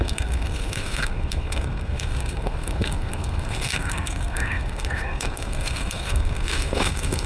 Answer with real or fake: fake